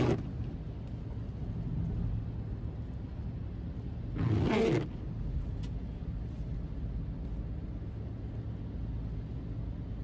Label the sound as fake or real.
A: real